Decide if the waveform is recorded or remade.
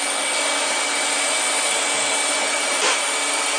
recorded